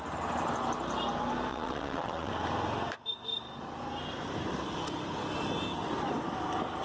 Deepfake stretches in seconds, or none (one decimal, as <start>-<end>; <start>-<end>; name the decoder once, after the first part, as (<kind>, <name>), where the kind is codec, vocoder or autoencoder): 1.5-2.3 (vocoder, WaveNeXt)

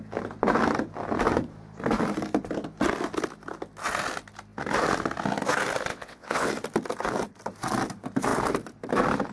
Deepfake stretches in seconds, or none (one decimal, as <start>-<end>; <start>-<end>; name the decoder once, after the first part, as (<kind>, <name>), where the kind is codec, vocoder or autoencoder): 5.9-6.5 (vocoder, WaveNeXt)

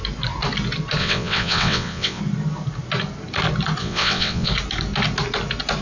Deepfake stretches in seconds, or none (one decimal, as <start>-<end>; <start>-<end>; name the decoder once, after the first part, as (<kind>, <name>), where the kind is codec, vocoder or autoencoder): 1.0-2.2 (vocoder, WaveNeXt); 3.8-4.5

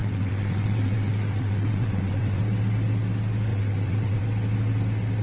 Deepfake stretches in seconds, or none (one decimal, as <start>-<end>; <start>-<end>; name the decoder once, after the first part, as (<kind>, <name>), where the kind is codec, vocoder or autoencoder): 0.0-2.4 (vocoder, WaveNeXt); 3.5-4.2

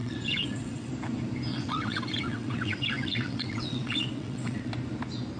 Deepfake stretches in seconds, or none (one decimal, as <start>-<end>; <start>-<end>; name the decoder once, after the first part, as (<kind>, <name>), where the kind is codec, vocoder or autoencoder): 0.0-0.9 (vocoder, WaveNeXt); 1.5-4.7

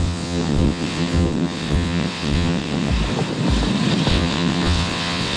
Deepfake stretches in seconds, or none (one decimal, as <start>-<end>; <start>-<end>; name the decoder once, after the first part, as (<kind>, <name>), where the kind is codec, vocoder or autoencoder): 0.0-2.9 (vocoder, WaveNeXt); 4.1-5.4

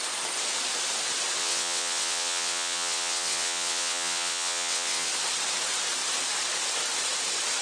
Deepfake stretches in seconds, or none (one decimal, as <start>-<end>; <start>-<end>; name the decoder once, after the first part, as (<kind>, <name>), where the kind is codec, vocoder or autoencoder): 1.4-5.1 (vocoder, WaveNeXt)

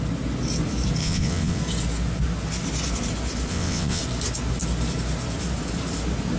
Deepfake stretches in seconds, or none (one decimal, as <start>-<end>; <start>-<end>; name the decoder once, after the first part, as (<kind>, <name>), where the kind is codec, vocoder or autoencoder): 1.0-1.6 (vocoder, WaveNeXt); 3.5-4.0